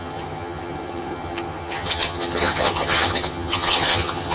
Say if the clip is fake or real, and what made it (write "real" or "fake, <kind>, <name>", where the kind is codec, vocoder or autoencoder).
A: fake, vocoder, HiFi-GAN